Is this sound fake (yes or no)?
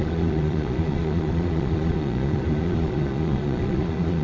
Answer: yes